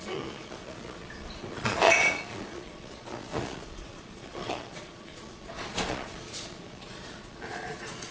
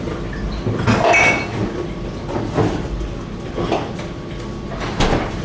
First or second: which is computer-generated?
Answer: first